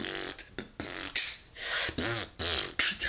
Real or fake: real